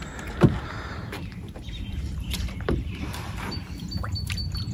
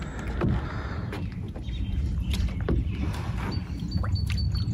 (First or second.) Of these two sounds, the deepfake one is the first